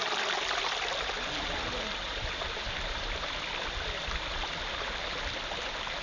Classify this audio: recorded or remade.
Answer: recorded